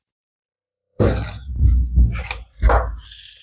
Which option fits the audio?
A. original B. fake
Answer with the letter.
B